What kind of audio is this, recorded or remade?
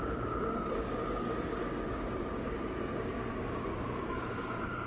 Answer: remade